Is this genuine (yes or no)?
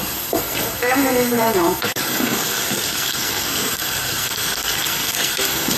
no